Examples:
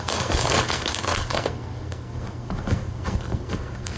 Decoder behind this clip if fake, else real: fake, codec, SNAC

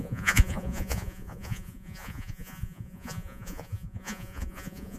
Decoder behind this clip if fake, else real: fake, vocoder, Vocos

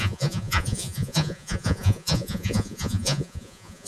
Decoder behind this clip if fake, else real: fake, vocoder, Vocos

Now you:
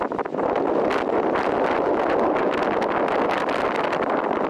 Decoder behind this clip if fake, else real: real